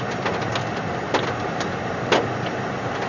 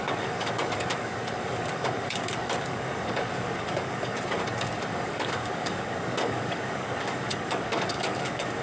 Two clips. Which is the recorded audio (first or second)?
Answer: first